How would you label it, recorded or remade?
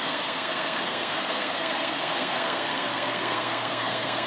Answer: remade